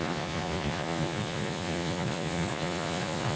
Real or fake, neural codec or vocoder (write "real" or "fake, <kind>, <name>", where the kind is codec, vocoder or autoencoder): fake, vocoder, Vocos